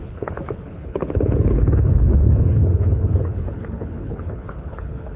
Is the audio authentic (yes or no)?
no